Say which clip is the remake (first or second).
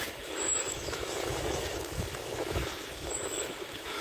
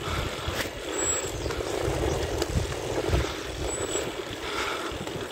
first